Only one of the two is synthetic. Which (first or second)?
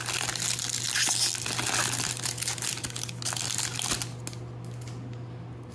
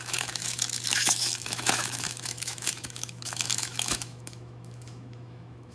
second